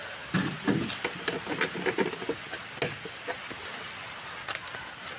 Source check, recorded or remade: recorded